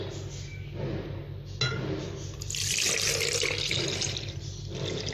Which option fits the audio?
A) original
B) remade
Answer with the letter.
A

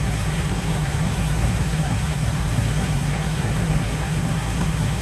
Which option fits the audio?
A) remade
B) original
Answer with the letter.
A